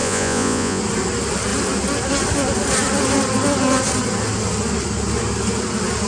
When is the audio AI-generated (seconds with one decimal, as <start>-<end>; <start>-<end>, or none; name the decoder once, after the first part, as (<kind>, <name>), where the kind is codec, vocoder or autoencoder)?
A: 0.0-0.8 (vocoder, Vocos)